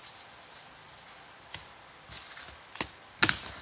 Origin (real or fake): real